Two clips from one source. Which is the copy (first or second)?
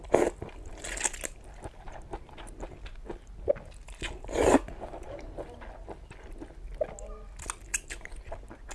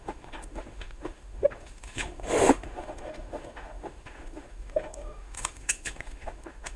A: second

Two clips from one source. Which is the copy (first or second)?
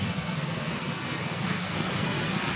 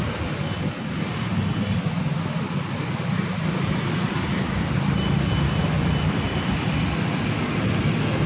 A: first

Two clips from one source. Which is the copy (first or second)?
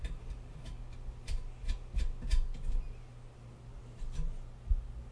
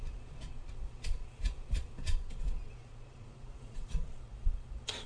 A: second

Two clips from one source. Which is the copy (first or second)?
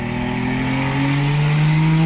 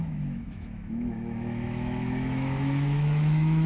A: second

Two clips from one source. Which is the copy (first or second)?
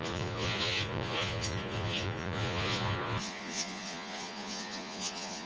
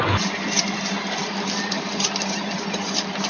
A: first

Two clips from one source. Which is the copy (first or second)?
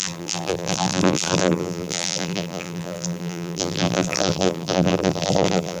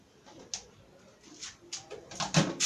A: first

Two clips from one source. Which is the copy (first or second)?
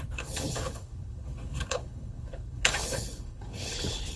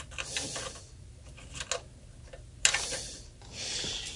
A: first